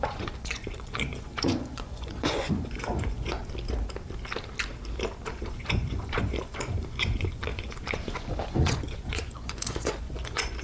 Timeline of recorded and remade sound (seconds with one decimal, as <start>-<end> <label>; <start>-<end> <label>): 0.0-3.4 remade; 3.4-5.3 recorded; 5.3-10.6 remade